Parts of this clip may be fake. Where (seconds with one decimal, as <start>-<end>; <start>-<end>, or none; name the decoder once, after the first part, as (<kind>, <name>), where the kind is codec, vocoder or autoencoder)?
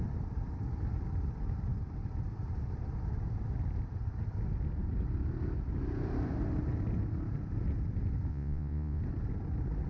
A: 8.3-9.0 (vocoder, Vocos)